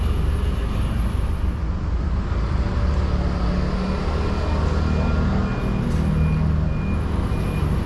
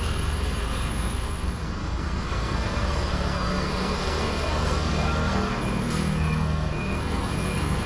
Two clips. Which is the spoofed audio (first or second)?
second